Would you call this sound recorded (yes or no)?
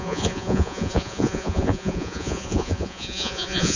no